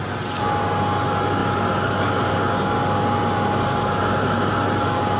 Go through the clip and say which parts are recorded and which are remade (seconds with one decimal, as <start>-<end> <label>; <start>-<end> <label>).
0.0-5.2 recorded